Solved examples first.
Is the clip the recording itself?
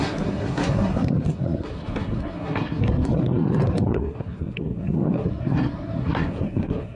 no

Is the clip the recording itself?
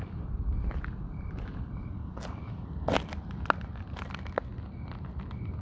yes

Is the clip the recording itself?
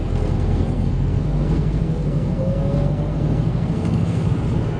no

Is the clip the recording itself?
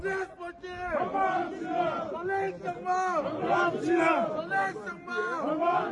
yes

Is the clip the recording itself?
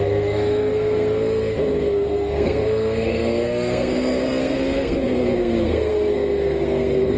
no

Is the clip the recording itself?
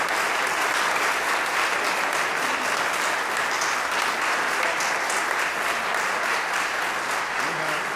yes